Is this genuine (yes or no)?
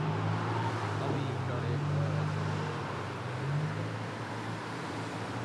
yes